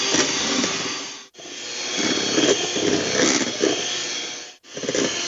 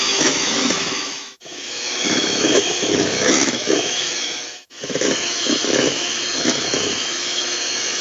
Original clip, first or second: first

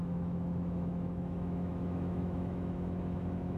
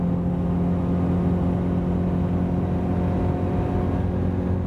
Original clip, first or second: second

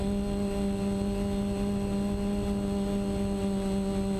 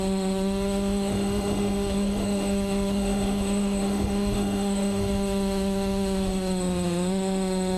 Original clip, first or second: first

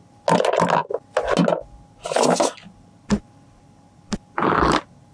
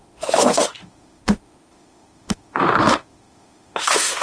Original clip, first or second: first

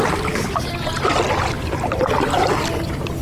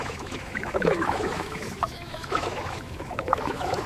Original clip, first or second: first